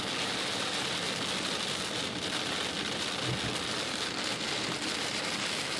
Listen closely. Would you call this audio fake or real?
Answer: real